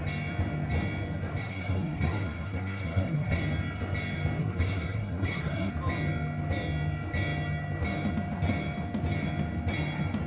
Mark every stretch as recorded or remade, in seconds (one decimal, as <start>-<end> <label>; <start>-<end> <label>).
0.0-1.4 recorded; 1.4-3.4 remade; 3.4-4.4 recorded; 4.4-5.7 remade; 5.7-10.3 recorded